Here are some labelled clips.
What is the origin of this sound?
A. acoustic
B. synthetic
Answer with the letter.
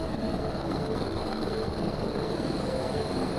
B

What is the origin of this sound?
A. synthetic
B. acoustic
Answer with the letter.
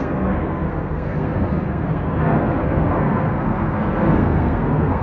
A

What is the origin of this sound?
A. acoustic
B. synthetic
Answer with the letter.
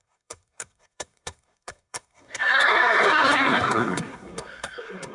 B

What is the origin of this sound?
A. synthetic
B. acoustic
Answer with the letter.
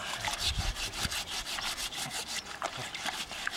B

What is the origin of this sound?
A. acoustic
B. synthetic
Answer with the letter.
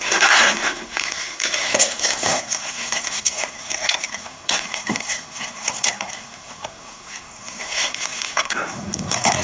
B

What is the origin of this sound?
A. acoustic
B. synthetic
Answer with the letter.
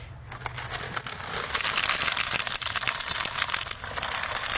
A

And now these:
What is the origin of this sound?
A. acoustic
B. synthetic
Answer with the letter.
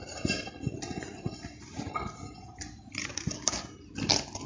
A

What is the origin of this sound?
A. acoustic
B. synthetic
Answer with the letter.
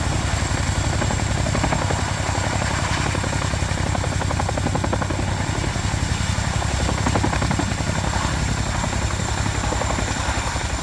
A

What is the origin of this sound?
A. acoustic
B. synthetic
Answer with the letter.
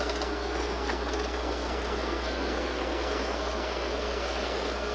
B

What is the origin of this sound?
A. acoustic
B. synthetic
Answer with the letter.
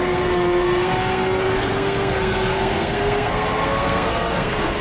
B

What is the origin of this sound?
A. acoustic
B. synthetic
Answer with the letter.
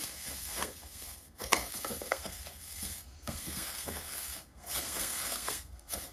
B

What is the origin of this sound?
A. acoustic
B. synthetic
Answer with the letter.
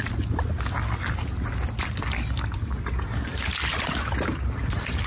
A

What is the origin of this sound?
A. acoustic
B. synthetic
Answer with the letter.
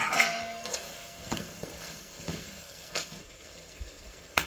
B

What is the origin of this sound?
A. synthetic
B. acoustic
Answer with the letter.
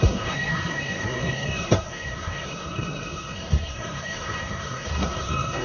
A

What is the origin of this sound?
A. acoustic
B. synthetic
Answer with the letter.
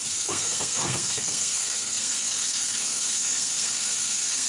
B